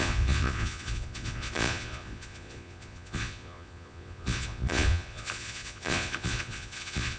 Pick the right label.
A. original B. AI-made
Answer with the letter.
B